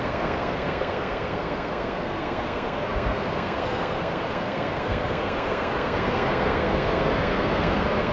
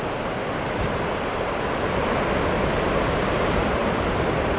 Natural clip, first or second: second